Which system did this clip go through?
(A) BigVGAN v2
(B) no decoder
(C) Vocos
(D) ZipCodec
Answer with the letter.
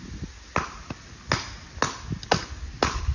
B